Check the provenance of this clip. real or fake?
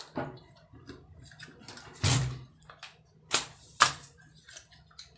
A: real